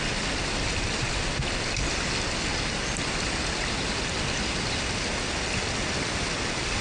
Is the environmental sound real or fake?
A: real